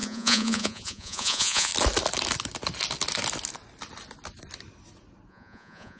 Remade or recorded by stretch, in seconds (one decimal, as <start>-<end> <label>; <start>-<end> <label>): 0.0-1.7 remade; 1.7-5.3 recorded; 5.3-6.0 remade